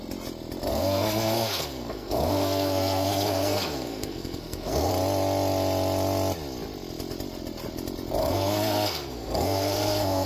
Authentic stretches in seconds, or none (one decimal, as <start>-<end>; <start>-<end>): 0.0-0.7; 4.9-8.2